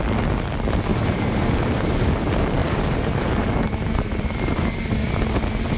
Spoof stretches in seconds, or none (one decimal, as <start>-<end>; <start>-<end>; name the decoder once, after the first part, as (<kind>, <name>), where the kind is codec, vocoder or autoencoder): 0.9-2.1 (vocoder, BigVGAN v2); 2.6-4.6